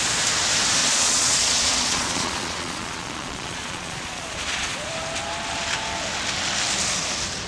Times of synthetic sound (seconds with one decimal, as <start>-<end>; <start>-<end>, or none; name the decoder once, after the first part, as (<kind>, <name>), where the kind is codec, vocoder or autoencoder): 0.8-4.9 (vocoder, Vocos)